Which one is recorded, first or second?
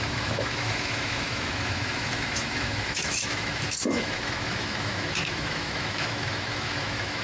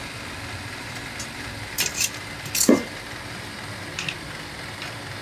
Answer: second